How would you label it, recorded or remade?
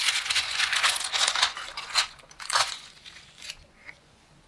remade